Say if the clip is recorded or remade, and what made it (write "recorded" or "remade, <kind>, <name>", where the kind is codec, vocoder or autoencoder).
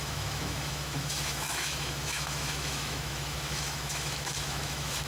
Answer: remade, autoencoder, DAC-VAE